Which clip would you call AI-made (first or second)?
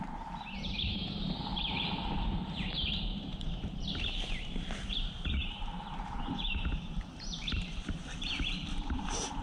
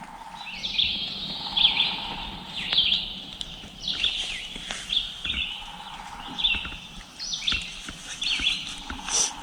first